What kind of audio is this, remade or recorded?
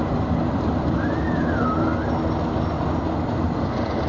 recorded